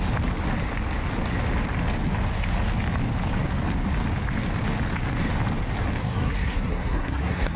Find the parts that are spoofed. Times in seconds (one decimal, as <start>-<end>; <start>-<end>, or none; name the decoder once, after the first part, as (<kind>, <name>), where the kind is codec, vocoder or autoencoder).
6.0-7.6 (codec, SNAC)